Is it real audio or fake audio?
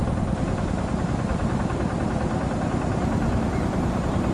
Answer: real